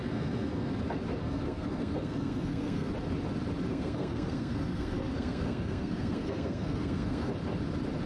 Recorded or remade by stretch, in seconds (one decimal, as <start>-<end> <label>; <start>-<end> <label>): 0.0-0.7 remade; 0.7-1.2 recorded; 1.2-2.9 remade; 2.9-3.7 recorded; 3.7-7.3 remade; 7.3-8.1 recorded